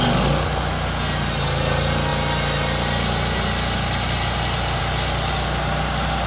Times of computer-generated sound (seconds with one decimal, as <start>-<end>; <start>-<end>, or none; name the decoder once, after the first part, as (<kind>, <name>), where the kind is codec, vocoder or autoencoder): none